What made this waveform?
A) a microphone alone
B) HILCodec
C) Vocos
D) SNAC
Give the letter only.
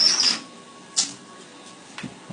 A